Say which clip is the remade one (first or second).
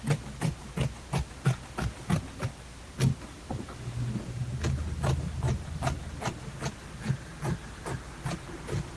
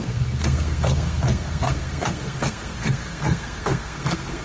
second